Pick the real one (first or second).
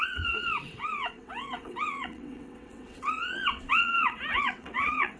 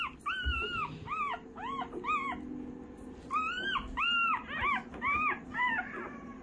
second